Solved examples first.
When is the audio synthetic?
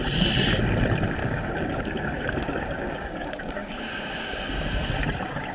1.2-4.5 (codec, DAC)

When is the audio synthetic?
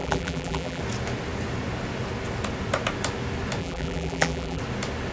0.0-0.8 (vocoder, BigVGAN v2); 3.6-4.6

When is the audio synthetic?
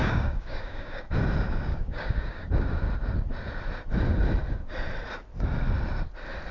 0.0-1.0 (codec, DAC); 1.7-2.5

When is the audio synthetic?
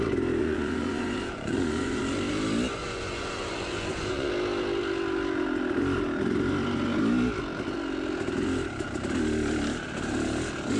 0.4-2.0 (vocoder, Vocos); 2.8-4.3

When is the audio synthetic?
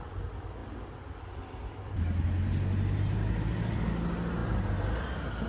none